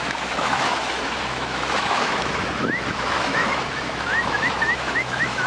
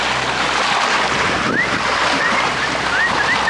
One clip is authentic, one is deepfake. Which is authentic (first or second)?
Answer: second